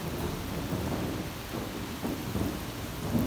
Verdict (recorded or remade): recorded